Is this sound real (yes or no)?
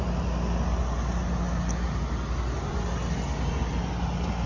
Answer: yes